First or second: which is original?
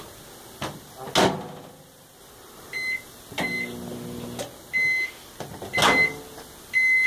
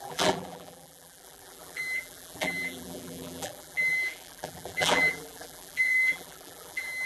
first